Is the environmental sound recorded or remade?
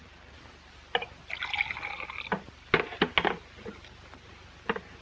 recorded